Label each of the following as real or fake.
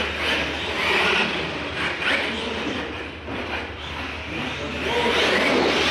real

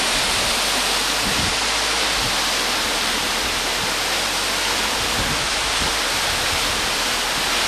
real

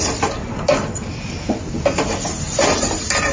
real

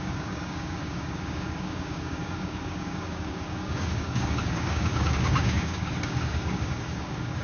fake